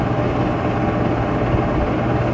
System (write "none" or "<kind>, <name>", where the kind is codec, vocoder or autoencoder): none